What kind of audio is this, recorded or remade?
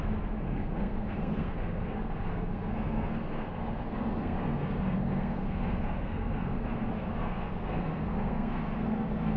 remade